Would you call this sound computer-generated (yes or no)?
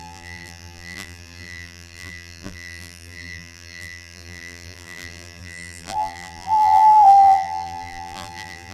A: yes